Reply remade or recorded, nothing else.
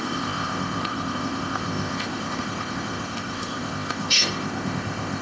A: remade